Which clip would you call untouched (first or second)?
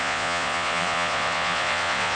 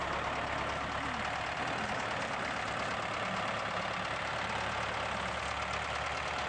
second